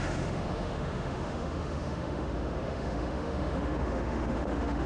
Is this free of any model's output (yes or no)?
no